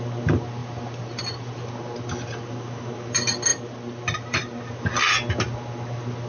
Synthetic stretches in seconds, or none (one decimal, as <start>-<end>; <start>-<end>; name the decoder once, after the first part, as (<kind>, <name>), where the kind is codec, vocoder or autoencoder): 0.6-2.5 (vocoder, BigVGAN v2); 3.5-4.7